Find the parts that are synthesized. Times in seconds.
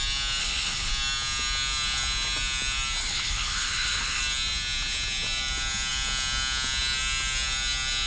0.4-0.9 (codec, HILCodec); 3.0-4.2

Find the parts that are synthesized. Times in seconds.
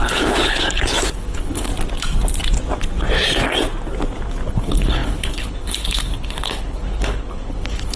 0.0-1.7 (codec, HILCodec); 4.5-8.0